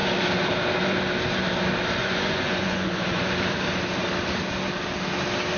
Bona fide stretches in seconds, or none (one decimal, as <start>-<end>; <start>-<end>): 0.0-2.0; 3.2-5.6